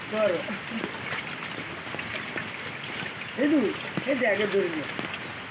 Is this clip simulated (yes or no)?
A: no